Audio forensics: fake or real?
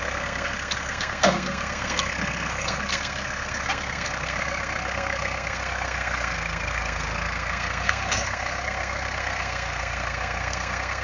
fake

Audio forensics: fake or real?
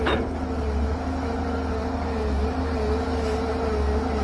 real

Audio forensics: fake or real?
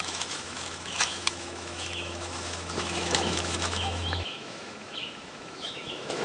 fake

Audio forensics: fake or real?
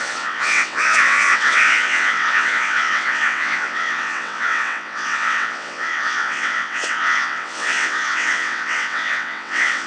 fake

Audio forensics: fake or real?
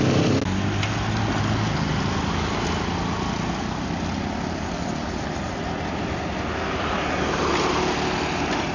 real